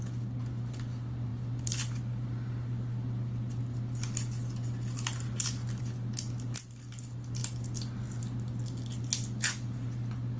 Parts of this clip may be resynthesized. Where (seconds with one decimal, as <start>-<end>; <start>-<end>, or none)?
1.3-5.8